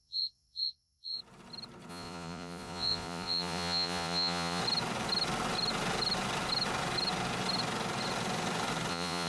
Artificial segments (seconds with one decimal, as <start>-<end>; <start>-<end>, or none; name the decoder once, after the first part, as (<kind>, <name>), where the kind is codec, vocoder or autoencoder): 0.0-1.2 (vocoder, Vocos); 1.9-4.6; 8.9-9.3